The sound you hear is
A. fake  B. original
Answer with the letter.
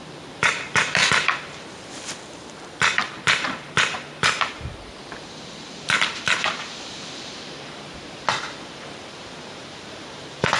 A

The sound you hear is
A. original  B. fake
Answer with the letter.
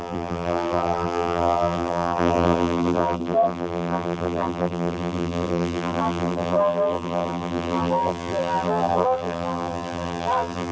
B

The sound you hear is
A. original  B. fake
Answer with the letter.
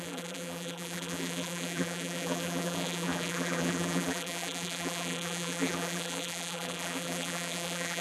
B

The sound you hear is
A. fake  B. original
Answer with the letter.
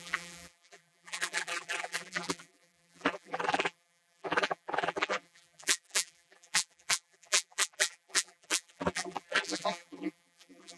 A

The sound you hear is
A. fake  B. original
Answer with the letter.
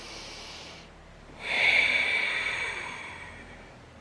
A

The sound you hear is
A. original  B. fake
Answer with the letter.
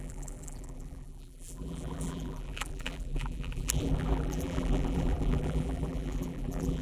B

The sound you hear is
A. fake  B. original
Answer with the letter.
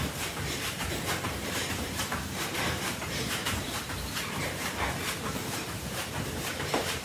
A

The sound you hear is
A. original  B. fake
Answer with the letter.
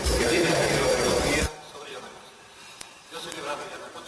B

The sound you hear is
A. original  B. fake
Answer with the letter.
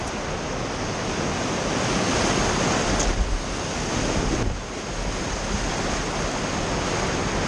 A